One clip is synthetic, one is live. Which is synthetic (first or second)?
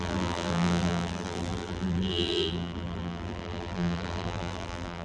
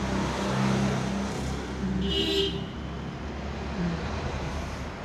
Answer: first